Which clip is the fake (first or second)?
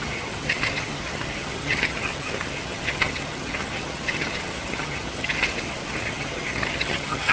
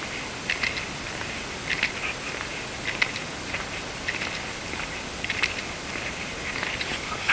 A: first